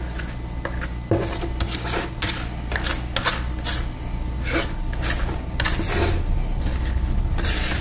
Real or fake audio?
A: real